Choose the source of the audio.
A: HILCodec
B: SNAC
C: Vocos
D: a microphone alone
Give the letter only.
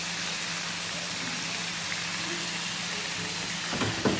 D